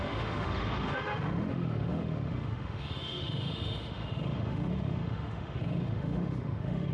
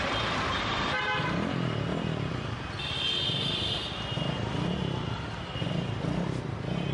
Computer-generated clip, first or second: first